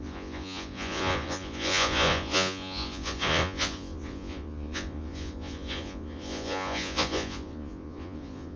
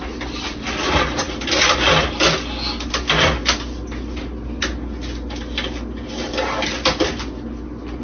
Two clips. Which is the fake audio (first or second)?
first